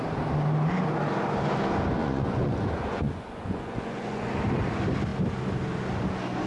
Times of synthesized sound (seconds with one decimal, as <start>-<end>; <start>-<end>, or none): 2.0-4.3